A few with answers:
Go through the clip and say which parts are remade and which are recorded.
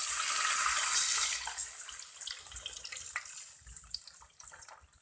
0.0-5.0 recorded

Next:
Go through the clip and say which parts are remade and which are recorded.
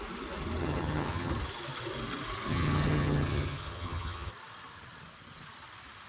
0.0-0.6 recorded; 0.6-1.3 remade; 1.3-2.5 recorded; 2.5-4.3 remade; 4.3-6.1 recorded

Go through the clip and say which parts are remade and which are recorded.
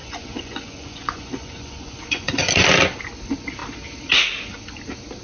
0.0-2.5 remade; 2.5-5.2 recorded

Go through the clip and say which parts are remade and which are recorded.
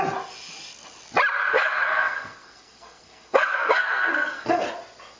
0.0-1.5 recorded; 1.5-4.6 remade; 4.6-5.2 recorded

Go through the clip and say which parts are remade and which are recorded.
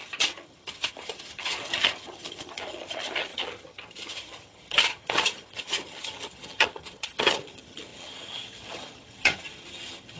0.0-10.2 remade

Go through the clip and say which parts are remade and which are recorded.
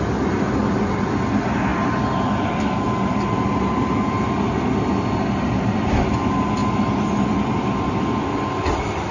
0.0-9.1 recorded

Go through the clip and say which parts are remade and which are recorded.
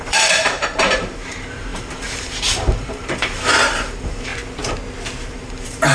0.0-4.3 remade; 4.3-5.3 recorded; 5.3-5.9 remade